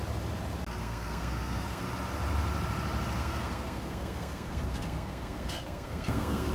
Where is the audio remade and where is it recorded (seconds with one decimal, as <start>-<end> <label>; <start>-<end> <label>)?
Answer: 0.0-0.8 recorded; 0.8-1.8 remade; 1.8-3.2 recorded; 3.2-6.5 remade